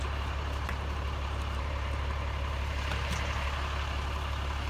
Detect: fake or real fake